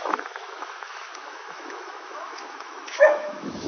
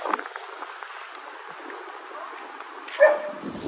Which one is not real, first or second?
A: first